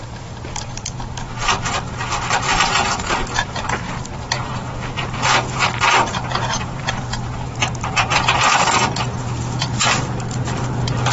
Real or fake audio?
fake